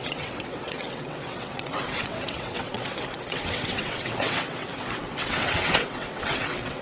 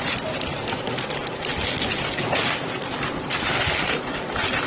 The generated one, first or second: first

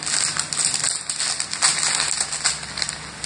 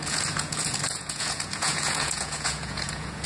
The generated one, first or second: second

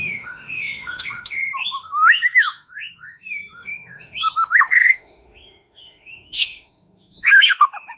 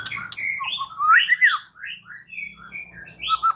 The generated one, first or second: first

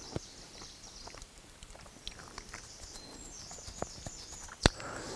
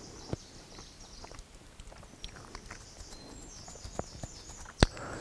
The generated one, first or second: first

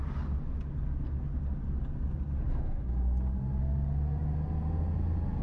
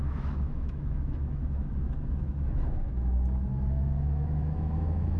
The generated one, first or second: second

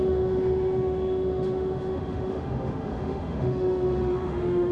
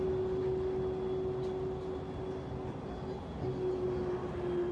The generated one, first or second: first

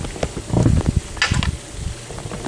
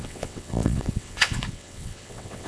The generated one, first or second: second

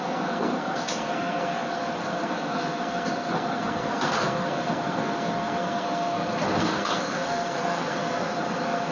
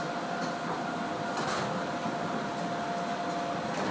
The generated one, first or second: first